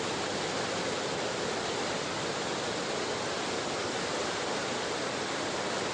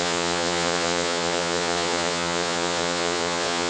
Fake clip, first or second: second